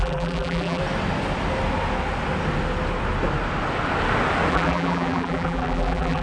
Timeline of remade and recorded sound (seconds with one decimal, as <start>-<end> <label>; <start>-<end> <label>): 0.0-0.8 remade; 0.8-4.5 recorded; 4.5-6.2 remade